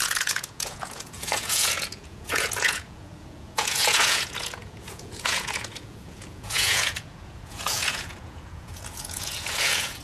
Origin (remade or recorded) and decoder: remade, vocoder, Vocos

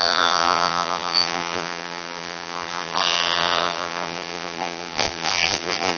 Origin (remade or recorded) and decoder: remade, vocoder, BigVGAN v2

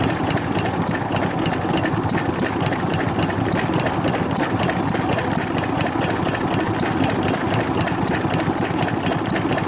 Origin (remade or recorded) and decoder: recorded